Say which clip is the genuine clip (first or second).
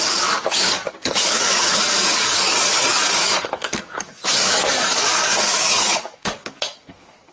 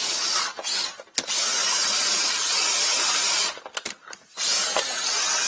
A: second